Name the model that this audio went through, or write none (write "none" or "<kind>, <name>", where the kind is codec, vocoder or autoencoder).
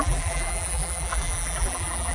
vocoder, BigVGAN v2